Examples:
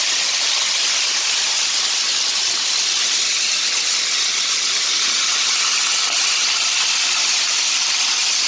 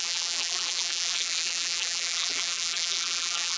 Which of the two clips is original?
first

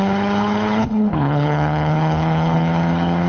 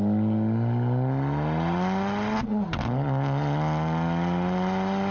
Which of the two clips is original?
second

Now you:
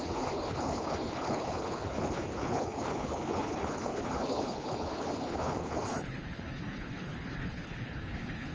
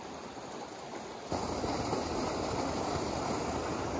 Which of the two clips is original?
second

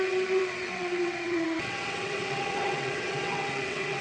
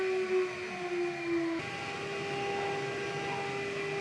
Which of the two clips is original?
second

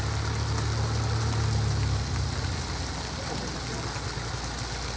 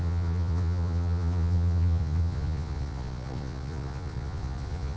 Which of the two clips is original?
first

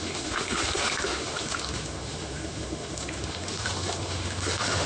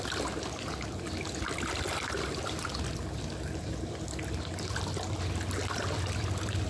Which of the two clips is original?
second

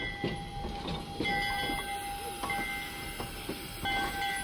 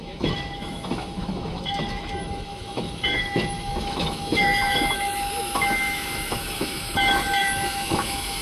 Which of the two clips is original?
first